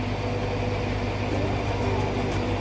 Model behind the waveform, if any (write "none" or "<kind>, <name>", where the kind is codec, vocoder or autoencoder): none